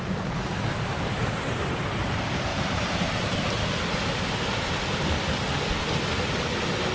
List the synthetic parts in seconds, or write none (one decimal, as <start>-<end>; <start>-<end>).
0.7-2.1; 2.5-3.2